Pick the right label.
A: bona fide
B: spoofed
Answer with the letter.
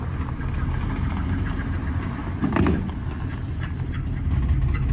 A